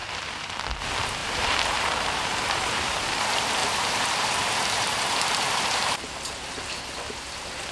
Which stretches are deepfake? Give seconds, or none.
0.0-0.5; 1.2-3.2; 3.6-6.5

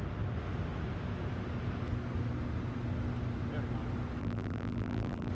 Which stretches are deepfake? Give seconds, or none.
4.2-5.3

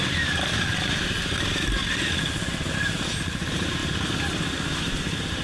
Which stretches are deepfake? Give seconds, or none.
0.0-1.8; 2.7-3.8; 4.8-5.4